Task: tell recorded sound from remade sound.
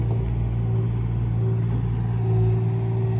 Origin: recorded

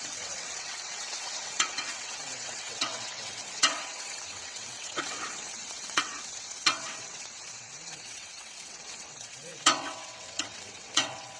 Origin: remade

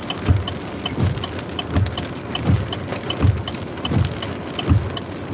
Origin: recorded